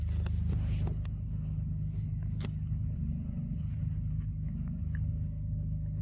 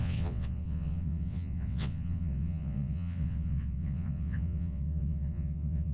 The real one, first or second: first